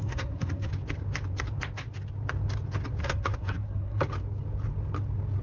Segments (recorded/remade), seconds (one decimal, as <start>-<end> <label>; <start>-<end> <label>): 0.0-0.7 remade; 0.7-3.0 recorded; 3.0-4.0 remade; 4.0-5.4 recorded